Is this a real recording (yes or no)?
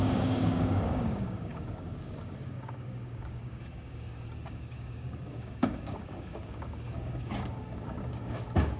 no